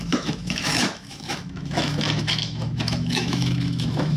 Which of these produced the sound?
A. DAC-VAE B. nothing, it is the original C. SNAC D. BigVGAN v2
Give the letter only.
A